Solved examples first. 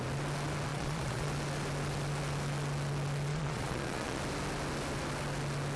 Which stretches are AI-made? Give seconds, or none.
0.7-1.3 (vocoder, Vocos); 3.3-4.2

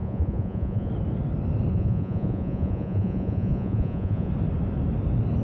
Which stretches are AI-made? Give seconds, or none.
0.0-0.9 (vocoder, Vocos); 1.7-4.3

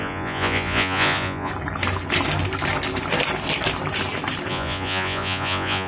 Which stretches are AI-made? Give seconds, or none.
0.0-1.5 (vocoder, Vocos); 4.5-5.9

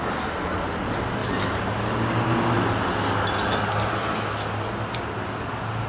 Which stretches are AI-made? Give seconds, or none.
none

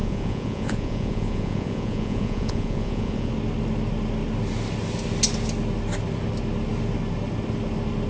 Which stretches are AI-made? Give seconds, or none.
0.0-3.3 (vocoder, Vocos)

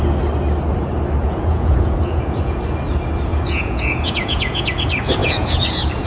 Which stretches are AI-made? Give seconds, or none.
1.2-2.6 (vocoder, Vocos); 3.3-4.7; 5.2-6.1

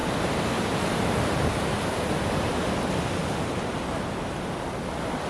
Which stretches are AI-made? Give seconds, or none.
none

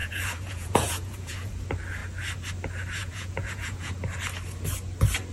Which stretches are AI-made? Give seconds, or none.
0.0-1.5 (vocoder, Vocos); 3.0-3.9